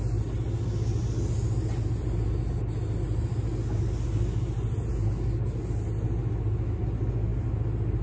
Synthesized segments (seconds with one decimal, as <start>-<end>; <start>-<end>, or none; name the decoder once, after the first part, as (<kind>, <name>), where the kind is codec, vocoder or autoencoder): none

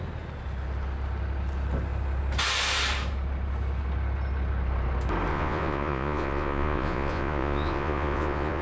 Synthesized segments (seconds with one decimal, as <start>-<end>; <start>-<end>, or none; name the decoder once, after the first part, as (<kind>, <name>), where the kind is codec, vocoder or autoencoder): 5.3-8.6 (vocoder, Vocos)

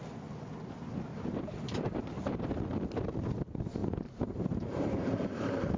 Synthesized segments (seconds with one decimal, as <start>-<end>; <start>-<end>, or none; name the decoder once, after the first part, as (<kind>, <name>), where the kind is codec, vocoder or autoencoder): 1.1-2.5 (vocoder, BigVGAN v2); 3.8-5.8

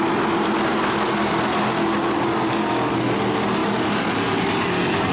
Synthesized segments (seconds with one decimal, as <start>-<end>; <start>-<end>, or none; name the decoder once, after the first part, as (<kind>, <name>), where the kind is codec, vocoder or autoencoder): none

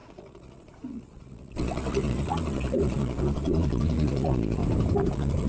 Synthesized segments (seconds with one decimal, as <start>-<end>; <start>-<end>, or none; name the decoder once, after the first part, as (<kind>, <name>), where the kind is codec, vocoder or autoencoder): 0.0-4.6 (vocoder, Vocos); 5.1-5.5